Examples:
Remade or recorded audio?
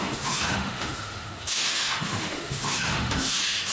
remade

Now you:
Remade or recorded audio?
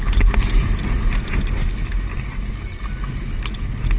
recorded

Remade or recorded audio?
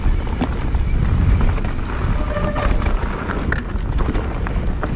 recorded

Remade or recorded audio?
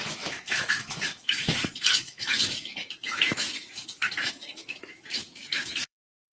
remade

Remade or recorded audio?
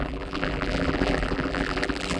remade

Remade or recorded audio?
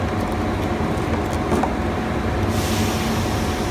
recorded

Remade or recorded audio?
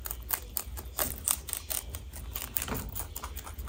recorded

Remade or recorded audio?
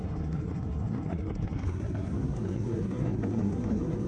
remade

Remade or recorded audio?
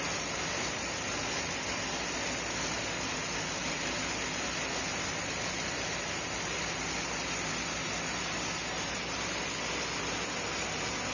recorded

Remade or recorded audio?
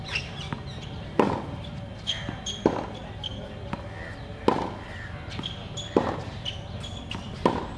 recorded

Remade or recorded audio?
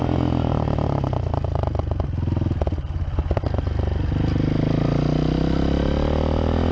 recorded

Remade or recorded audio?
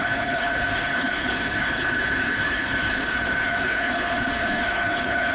remade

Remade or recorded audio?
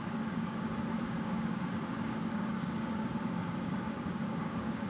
remade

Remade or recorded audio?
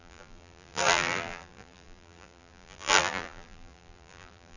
remade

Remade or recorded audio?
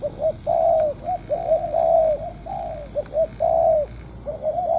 recorded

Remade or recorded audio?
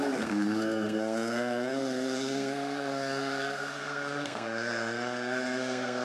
remade